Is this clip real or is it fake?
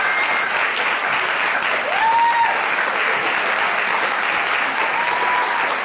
real